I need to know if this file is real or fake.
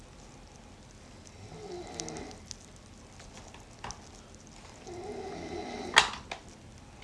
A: real